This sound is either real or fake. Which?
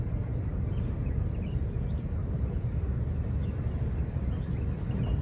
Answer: real